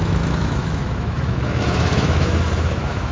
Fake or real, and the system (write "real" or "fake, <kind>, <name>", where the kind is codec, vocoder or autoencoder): fake, autoencoder, DAC-VAE